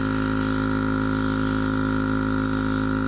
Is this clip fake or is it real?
real